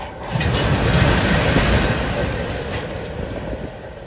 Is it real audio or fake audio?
real